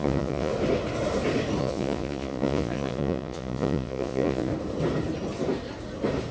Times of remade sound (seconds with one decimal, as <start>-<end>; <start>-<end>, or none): 0.0-0.5; 1.6-4.5